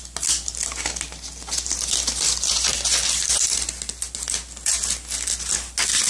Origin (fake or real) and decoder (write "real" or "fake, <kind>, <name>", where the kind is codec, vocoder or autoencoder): real